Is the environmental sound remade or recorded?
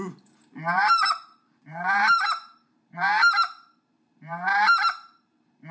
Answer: remade